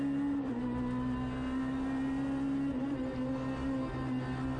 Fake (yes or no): no